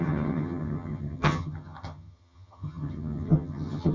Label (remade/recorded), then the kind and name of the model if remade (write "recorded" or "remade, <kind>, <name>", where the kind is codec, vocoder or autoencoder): remade, vocoder, HiFi-GAN